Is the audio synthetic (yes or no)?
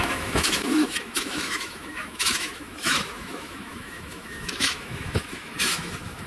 yes